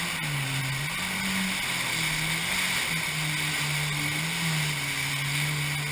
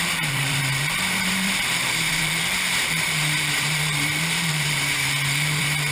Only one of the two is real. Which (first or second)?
first